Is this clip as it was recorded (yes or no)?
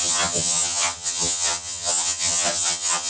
no